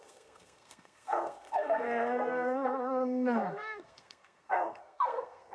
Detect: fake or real fake